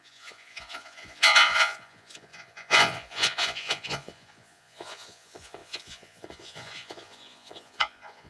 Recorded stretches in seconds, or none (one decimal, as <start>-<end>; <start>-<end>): none